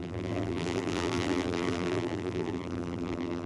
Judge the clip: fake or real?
fake